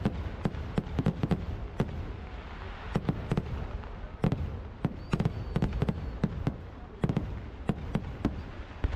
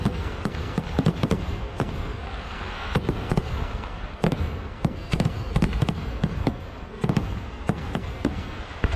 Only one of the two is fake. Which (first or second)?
second